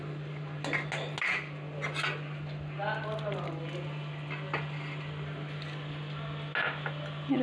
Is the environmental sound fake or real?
real